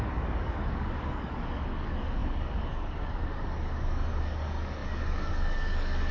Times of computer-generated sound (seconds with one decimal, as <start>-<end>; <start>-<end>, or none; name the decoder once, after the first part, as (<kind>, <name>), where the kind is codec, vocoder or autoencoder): 0.0-6.1 (codec, DAC)